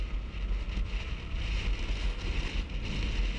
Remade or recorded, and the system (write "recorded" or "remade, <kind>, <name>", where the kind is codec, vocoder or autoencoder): recorded